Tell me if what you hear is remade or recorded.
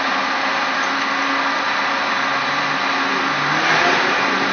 recorded